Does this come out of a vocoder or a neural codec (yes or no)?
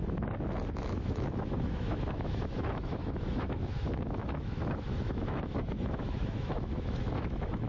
yes